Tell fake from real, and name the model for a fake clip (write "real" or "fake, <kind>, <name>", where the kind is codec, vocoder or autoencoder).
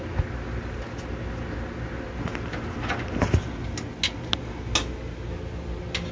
real